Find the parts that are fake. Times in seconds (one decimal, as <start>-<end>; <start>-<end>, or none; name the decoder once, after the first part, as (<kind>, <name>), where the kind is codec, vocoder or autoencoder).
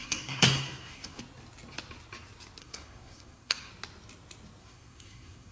0.0-1.2 (codec, SNAC); 2.6-3.7; 4.6-5.5